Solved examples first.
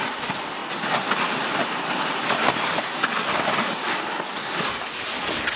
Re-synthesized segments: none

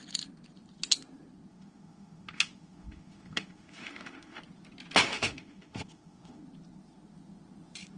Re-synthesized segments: 1.5-4.4 (autoencoder, DAC-VAE); 5.0-6.4

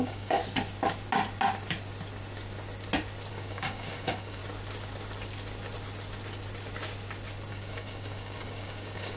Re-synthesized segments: 0.0-0.4 (codec, DAC); 3.3-4.4; 7.5-9.2

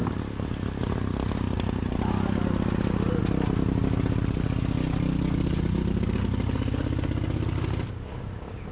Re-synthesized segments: none

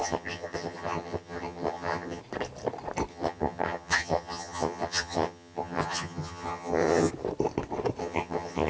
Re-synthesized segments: 0.0-2.2 (vocoder, HiFi-GAN); 3.1-7.1; 8.0-8.7